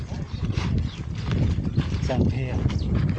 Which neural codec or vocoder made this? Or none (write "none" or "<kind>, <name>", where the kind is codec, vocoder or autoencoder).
none